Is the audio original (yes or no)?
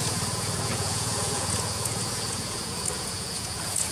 no